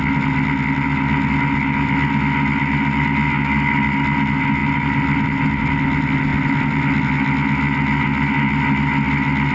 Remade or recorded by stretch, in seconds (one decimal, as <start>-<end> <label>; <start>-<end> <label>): 0.0-9.5 recorded